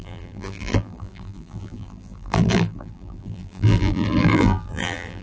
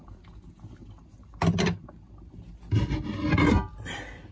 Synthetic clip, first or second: first